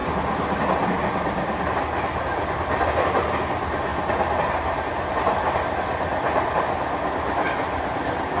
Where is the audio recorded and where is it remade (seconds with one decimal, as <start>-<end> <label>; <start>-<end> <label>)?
0.0-8.4 recorded

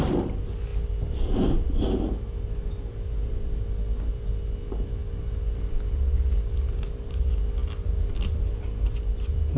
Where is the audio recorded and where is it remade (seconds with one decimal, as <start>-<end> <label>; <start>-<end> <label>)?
0.0-9.6 recorded

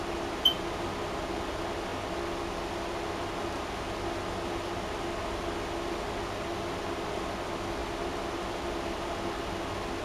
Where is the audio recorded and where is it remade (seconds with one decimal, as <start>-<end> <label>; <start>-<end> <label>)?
0.0-10.0 recorded

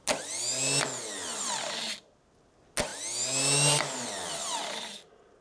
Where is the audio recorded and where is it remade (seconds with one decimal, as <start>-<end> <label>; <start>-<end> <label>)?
0.0-5.4 recorded

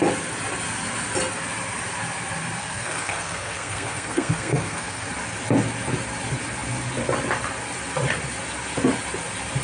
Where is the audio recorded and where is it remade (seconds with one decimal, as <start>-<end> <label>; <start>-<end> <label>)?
0.0-2.6 recorded; 2.6-5.1 remade; 5.1-9.6 recorded